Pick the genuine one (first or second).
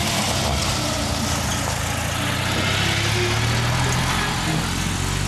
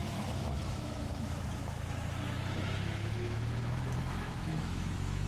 first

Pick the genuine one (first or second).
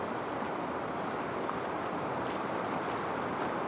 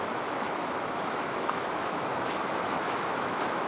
first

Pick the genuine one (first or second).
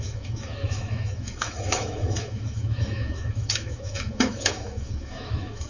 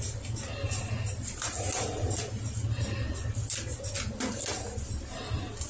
second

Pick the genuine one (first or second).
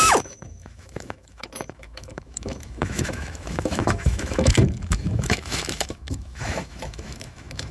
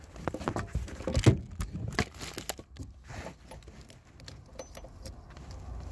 second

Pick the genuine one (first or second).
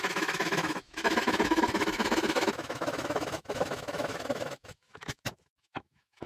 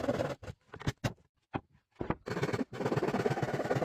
second